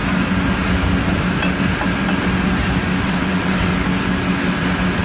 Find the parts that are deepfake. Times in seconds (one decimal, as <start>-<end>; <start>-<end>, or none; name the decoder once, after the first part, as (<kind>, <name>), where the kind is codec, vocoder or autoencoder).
3.0-3.7 (vocoder, WaveNeXt)